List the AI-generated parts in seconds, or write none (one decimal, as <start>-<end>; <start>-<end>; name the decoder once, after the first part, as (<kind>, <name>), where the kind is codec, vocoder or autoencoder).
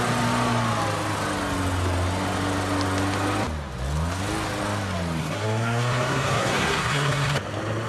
5.2-7.4 (codec, SNAC)